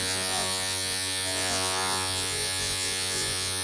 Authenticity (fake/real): fake